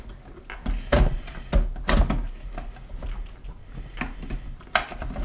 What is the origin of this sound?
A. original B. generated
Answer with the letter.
A